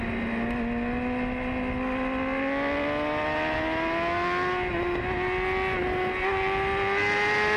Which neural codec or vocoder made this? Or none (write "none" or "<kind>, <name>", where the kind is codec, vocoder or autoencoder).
none